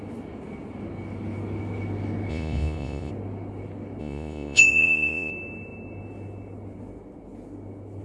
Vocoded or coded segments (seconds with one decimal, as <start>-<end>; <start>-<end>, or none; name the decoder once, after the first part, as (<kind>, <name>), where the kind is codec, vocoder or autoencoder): 2.3-3.1 (vocoder, Vocos); 4.0-5.3